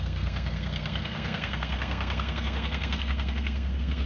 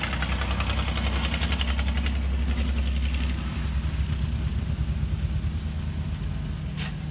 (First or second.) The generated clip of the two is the first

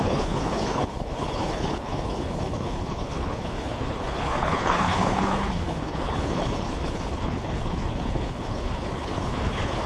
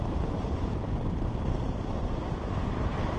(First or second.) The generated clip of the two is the first